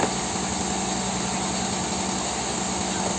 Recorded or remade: recorded